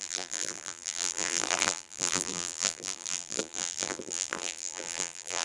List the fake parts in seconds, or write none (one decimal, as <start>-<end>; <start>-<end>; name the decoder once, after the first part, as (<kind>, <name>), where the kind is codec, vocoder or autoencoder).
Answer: 0.0-5.4 (vocoder, BigVGAN v2)